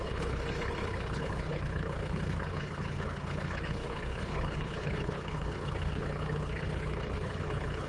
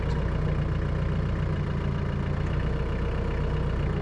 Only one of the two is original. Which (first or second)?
second